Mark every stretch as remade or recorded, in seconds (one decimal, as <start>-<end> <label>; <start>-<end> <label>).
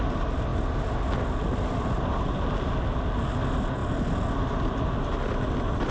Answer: 0.0-5.9 recorded